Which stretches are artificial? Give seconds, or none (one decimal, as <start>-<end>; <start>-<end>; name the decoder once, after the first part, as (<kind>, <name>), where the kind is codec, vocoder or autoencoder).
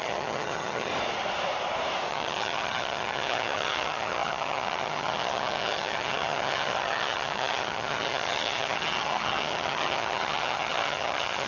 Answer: 0.0-0.9 (vocoder, HiFi-GAN); 2.1-11.5